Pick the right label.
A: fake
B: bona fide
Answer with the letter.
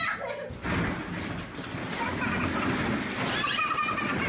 B